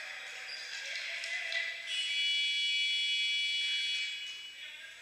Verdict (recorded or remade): recorded